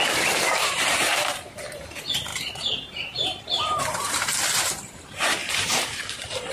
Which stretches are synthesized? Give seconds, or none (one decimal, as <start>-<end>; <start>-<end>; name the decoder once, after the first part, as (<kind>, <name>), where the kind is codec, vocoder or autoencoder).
0.0-6.5 (vocoder, BigVGAN v2)